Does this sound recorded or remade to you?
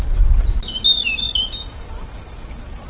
recorded